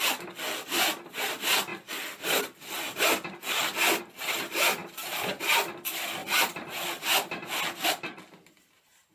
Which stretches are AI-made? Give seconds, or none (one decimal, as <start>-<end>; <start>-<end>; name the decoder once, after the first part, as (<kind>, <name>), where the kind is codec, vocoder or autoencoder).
4.8-5.4 (vocoder, BigVGAN v2)